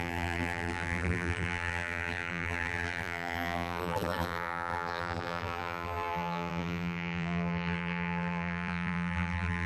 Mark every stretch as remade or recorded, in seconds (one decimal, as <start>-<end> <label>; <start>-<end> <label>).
0.0-9.7 remade